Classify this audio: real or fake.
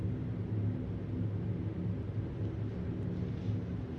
real